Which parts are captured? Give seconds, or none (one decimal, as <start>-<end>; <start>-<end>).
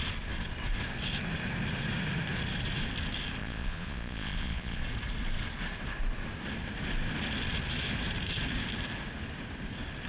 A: 0.0-3.4; 4.8-10.1